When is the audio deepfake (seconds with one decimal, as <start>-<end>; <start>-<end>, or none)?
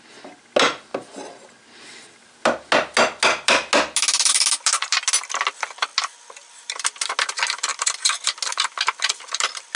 none